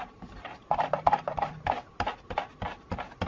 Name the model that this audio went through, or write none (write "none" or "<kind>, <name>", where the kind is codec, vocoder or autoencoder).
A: none